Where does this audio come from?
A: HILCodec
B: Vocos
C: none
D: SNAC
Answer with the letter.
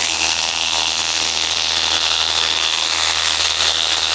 D